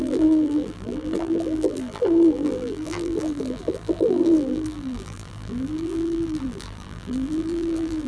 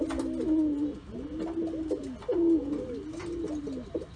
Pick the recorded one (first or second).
second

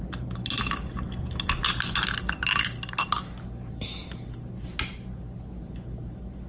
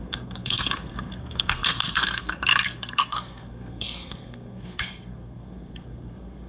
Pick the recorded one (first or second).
first